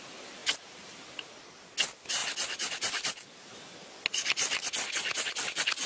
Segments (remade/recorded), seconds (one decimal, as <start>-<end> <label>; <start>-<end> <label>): 0.0-5.9 recorded